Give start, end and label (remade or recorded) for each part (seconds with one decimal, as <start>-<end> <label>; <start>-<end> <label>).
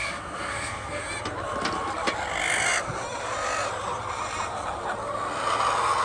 0.0-1.0 remade; 1.0-6.0 recorded